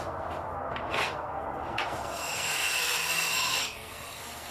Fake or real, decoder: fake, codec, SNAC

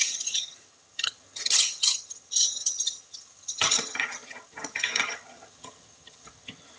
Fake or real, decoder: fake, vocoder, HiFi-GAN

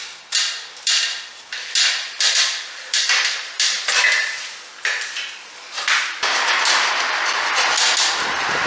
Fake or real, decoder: real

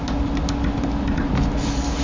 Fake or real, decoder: real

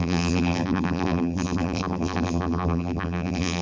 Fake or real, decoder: fake, vocoder, BigVGAN v2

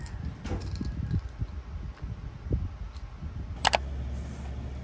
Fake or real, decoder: real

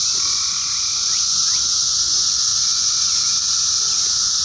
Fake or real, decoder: fake, vocoder, Vocos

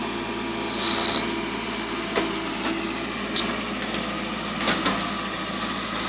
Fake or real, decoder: real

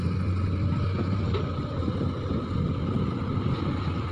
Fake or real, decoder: real